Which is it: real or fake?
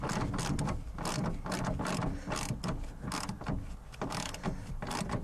real